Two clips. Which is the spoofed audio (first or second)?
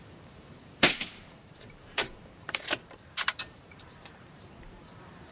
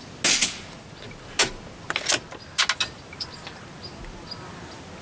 first